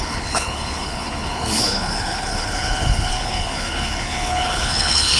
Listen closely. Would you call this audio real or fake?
fake